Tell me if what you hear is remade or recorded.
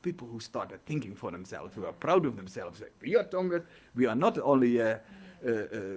remade